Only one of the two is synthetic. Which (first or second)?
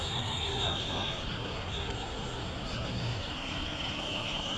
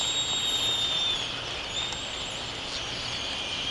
first